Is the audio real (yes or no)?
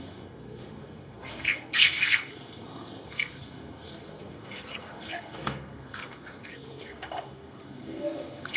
no